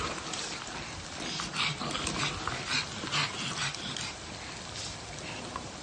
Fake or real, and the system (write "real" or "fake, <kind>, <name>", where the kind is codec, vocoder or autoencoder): real